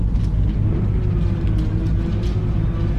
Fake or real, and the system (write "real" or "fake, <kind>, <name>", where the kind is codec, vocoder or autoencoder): real